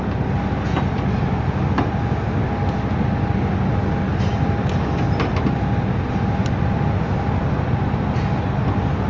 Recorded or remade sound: recorded